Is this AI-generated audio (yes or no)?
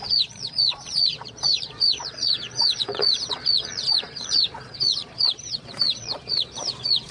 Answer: yes